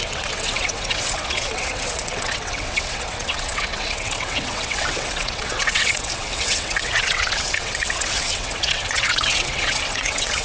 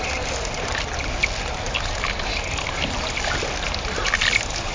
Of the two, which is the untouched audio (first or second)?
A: second